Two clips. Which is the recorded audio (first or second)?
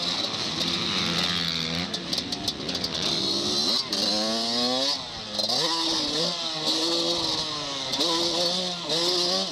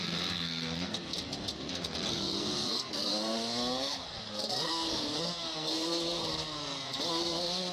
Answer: first